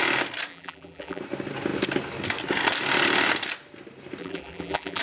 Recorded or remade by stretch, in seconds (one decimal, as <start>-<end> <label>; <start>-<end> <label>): 0.0-0.5 recorded; 0.5-1.2 remade; 1.2-4.2 recorded; 4.2-5.0 remade